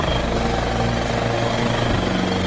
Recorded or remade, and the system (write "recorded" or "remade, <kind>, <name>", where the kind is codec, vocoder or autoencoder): recorded